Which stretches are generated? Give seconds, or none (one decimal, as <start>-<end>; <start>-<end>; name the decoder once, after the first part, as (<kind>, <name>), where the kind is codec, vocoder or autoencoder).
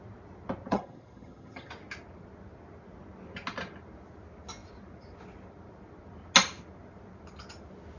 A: 0.7-1.7 (vocoder, HiFi-GAN)